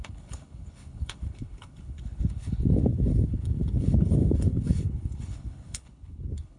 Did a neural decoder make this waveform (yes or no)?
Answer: yes